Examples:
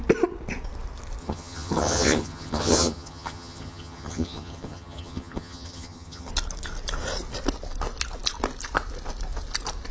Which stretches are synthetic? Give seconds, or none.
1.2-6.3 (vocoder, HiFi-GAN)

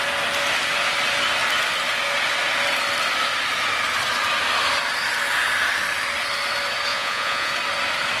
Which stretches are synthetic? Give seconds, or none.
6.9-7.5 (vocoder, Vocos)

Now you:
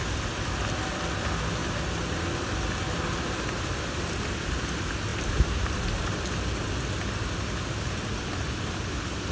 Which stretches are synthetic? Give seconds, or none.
5.1-6.4 (vocoder, BigVGAN v2)